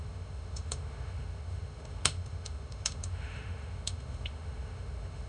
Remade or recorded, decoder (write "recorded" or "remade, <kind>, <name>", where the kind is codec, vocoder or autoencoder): remade, autoencoder, DAC-VAE